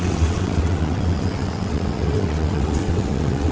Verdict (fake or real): fake